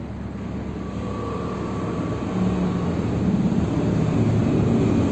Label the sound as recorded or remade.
recorded